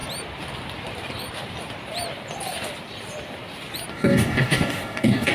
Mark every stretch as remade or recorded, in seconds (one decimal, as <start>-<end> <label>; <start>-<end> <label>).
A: 0.0-3.9 recorded; 3.9-5.3 remade